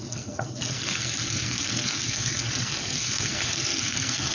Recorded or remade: remade